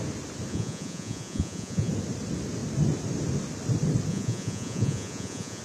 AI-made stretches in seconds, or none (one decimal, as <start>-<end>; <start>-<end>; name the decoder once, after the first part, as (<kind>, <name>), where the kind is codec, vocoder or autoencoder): 0.5-1.9 (vocoder, Vocos); 4.1-5.6